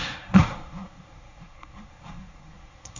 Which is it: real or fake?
fake